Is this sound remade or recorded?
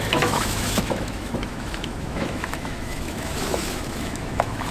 remade